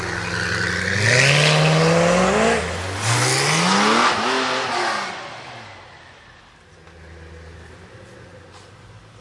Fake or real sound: real